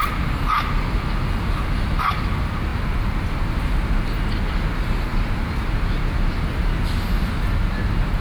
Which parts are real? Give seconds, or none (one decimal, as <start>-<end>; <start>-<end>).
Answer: 0.0-8.2